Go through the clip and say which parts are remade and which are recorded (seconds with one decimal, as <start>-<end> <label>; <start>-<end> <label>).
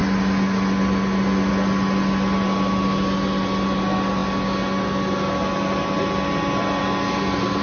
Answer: 0.0-7.6 recorded